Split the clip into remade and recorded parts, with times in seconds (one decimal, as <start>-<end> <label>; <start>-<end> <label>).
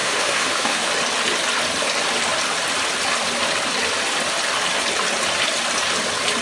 0.0-0.9 remade; 0.9-6.4 recorded